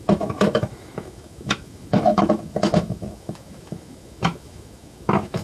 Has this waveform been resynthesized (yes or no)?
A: yes